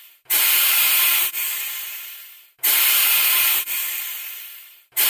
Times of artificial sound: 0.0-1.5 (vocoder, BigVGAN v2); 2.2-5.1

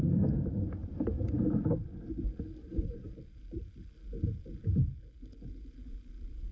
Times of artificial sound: 0.8-1.6 (vocoder, BigVGAN v2); 2.6-3.7

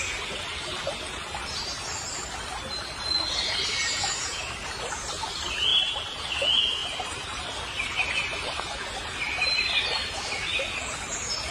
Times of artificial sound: 6.8-7.4 (vocoder, BigVGAN v2)

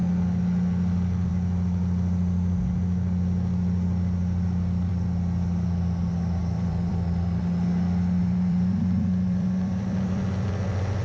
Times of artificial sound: 6.4-7.4 (vocoder, BigVGAN v2); 8.2-10.2

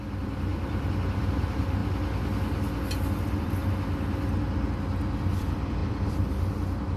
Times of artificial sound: 0.0-1.8 (vocoder, BigVGAN v2); 3.2-3.6; 5.2-7.0

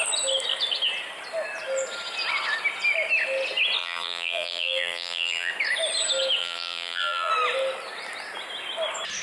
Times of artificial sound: 3.8-5.5 (vocoder, BigVGAN v2); 6.4-7.3